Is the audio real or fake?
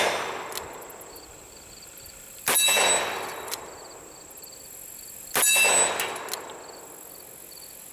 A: real